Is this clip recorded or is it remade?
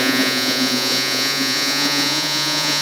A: remade